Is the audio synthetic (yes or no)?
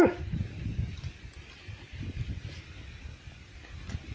no